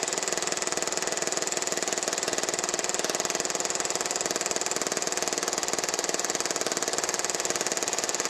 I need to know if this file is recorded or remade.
recorded